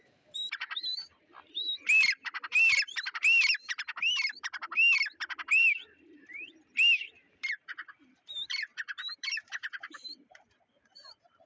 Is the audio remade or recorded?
remade